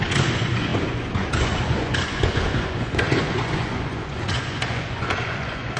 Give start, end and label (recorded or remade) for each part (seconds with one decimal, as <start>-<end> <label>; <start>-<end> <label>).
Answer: 0.0-5.8 remade